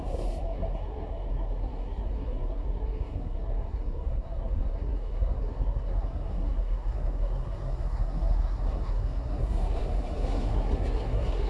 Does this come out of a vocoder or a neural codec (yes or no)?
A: yes